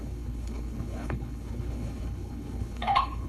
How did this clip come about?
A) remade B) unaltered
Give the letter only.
A